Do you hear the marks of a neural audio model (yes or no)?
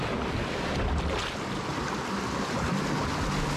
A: no